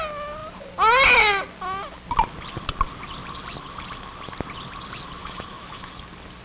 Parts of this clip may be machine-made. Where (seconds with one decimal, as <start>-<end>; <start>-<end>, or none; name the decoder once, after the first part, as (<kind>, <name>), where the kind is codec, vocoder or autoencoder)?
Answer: 5.2-5.9 (autoencoder, DAC-VAE)